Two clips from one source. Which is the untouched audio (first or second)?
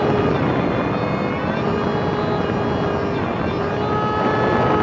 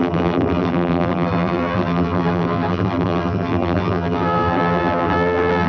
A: first